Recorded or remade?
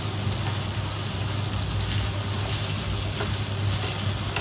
recorded